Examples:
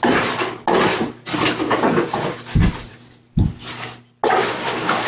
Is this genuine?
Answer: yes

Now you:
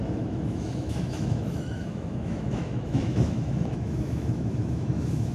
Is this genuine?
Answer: no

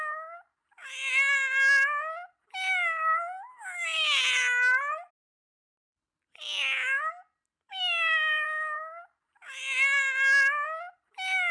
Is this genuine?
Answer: yes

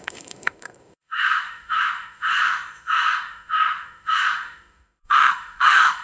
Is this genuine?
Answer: no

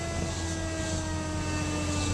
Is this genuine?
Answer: yes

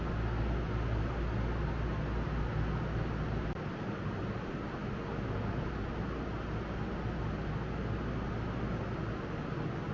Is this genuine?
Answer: yes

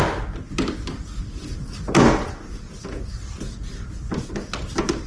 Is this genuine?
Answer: yes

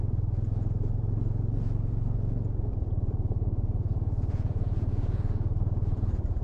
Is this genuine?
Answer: no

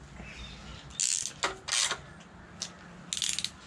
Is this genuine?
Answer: yes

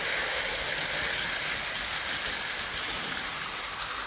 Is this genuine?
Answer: yes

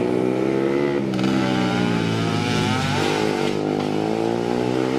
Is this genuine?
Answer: yes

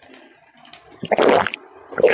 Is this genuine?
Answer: yes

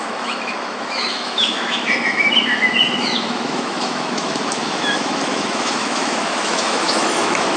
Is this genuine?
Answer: no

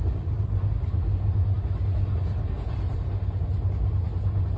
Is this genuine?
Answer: yes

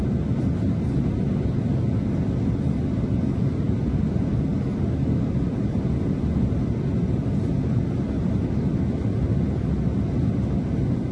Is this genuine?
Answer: yes